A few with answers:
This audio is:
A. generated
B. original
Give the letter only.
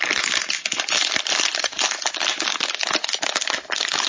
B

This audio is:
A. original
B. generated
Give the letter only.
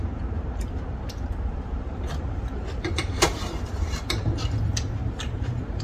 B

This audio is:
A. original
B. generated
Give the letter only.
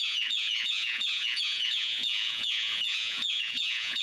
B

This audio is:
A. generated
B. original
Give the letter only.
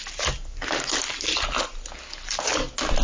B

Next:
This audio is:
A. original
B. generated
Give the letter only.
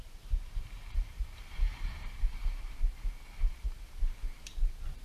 B